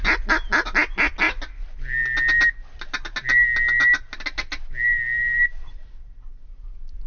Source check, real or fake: real